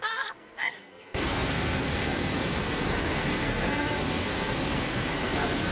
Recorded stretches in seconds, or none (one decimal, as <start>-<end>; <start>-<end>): none